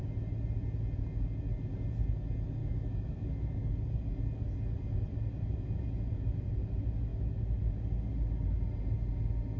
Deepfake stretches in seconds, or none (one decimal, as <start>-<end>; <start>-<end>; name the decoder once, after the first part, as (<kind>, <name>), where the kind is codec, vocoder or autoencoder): 2.6-3.7 (autoencoder, DAC-VAE); 7.1-7.6

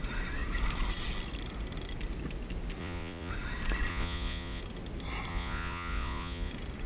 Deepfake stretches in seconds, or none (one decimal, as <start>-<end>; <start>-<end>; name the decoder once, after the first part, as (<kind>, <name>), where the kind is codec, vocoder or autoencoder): 2.8-3.3 (vocoder, Vocos); 3.9-4.6; 5.3-6.5

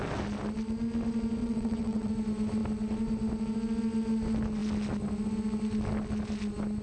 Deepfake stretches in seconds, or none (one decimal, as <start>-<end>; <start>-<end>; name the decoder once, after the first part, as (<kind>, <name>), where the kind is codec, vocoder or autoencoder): 1.4-2.1 (vocoder, WaveNeXt)